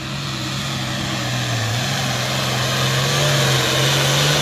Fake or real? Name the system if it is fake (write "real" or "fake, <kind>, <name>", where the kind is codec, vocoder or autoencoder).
real